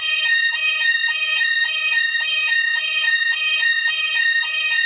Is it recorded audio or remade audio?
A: remade